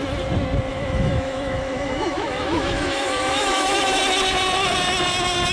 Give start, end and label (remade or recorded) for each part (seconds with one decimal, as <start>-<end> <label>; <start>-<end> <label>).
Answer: 0.0-0.7 recorded; 0.7-4.0 remade; 4.0-5.5 recorded